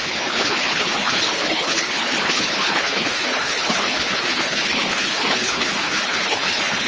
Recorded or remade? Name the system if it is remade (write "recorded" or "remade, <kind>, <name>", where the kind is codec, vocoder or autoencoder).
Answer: remade, codec, HILCodec